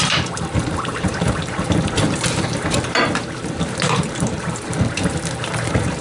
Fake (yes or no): yes